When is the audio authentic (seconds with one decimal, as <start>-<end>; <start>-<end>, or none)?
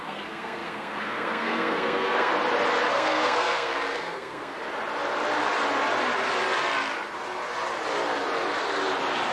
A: 2.3-2.9; 4.6-9.3